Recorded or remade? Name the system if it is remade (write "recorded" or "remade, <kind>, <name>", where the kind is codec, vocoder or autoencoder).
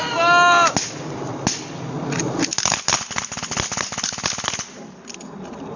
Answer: recorded